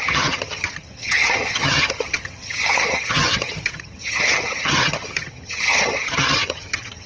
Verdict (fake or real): fake